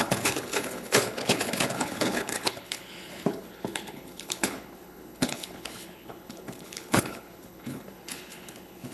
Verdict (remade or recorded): remade